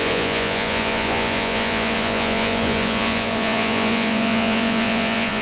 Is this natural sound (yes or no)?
no